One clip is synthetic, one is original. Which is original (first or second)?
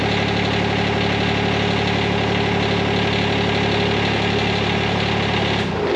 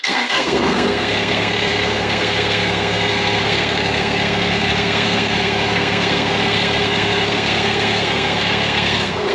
first